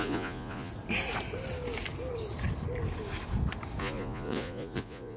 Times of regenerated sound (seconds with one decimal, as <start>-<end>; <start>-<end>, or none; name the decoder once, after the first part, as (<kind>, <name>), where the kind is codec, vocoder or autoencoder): 0.0-0.7 (vocoder, Vocos); 3.8-5.2